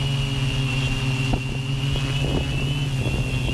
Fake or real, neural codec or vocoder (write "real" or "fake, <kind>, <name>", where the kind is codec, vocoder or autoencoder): real